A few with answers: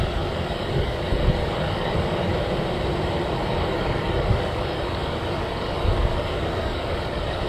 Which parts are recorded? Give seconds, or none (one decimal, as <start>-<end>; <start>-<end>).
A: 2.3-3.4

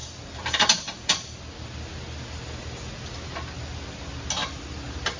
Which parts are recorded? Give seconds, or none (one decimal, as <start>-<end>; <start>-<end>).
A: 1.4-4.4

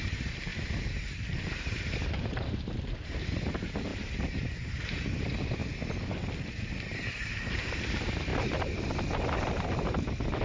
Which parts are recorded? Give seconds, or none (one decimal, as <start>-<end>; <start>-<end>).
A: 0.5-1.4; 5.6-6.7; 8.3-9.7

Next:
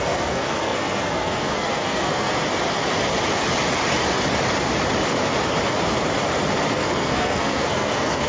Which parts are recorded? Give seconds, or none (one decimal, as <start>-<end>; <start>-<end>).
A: 2.3-6.7

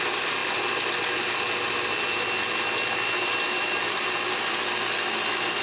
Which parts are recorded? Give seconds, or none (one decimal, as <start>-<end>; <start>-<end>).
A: 0.0-5.6

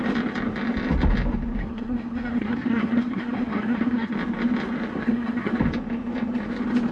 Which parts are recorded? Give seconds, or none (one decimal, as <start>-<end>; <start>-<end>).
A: 0.0-1.6; 4.1-4.9; 5.5-6.9

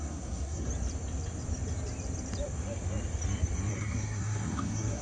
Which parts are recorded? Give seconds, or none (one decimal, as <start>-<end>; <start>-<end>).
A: 0.7-3.7

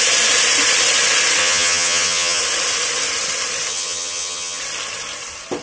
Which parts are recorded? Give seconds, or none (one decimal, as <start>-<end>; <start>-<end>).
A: 0.0-1.4; 2.4-3.7; 4.6-5.6